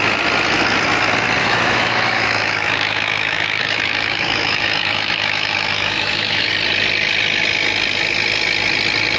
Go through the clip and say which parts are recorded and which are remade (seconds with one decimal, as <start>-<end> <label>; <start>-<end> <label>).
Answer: 0.0-1.4 recorded; 1.4-6.5 remade; 6.5-9.2 recorded